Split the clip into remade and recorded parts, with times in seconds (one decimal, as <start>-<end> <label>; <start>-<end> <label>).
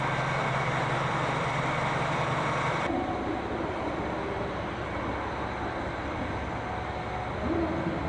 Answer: 0.0-0.4 recorded; 0.4-5.0 remade; 5.0-8.1 recorded